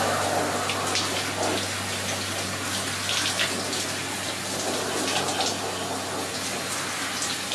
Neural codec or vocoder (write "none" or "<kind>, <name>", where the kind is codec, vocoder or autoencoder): none